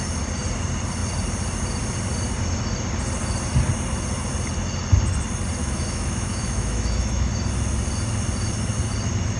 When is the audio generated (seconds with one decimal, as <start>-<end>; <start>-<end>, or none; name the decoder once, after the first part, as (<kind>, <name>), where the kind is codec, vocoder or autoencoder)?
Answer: 5.6-7.3 (autoencoder, DAC-VAE)